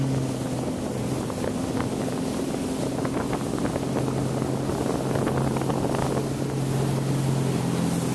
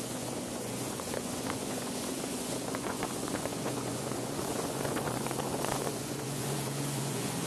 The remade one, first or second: second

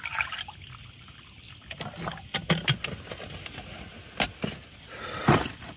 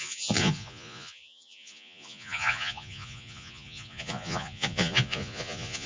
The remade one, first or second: second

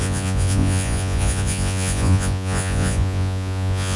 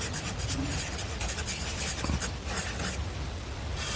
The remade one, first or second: first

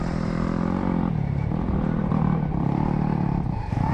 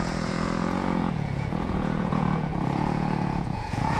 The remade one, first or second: second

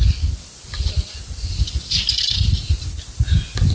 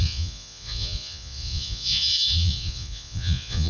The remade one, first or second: second